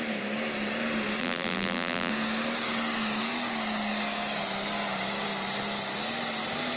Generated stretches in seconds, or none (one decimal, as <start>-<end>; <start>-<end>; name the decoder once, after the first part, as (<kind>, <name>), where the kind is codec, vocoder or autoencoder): 1.2-2.1 (vocoder, BigVGAN v2)